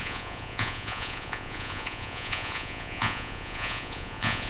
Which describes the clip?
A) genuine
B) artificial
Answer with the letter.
B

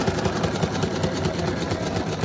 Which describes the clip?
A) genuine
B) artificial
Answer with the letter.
A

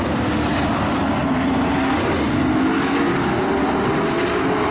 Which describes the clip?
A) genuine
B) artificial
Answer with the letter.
A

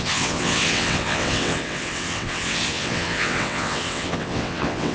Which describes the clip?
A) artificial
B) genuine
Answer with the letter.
A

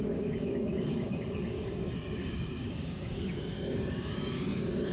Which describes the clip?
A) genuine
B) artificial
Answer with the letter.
B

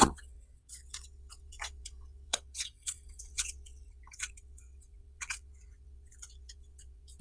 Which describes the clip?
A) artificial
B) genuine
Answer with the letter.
A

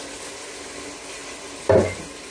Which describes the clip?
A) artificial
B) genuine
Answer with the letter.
B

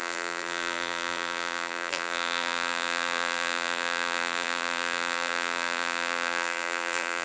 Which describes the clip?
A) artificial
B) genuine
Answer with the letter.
A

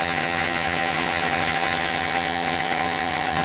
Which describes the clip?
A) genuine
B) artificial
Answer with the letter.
B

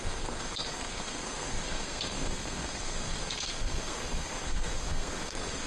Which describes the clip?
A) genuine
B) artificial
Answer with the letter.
B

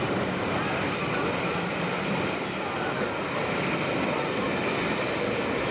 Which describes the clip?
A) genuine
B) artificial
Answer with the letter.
A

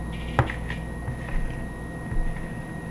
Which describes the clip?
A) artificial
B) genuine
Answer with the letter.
B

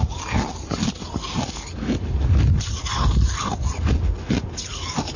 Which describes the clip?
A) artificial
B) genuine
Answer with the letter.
B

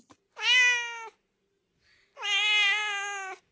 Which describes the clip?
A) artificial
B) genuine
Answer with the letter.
B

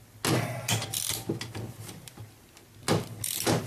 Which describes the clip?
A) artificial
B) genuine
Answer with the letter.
B